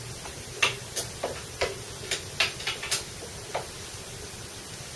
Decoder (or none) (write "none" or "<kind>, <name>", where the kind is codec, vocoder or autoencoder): none